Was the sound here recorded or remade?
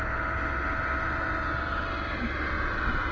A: recorded